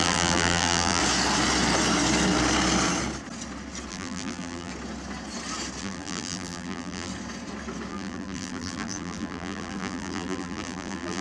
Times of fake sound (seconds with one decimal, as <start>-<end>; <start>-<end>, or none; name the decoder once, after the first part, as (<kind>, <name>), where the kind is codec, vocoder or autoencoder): 0.0-1.0 (vocoder, BigVGAN v2); 3.9-4.7; 5.8-7.1; 7.9-11.2

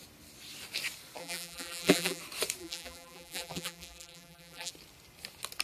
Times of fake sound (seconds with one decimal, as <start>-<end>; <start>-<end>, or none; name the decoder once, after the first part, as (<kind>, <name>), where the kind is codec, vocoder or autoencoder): 1.2-2.2 (vocoder, BigVGAN v2); 2.6-4.7

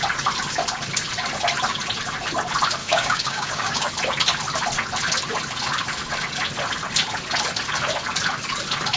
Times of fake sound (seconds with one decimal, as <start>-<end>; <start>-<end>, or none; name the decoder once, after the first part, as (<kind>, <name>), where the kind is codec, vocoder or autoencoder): 2.8-3.9 (codec, DAC)